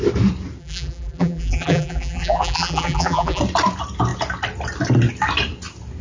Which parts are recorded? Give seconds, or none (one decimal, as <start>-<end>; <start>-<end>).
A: 0.0-0.6; 3.4-6.0